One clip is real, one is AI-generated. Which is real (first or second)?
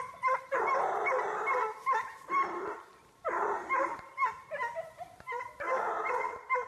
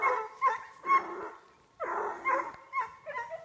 second